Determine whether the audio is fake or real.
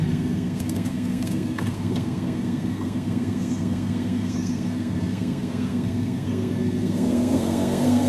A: fake